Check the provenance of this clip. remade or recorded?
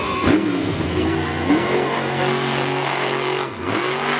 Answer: remade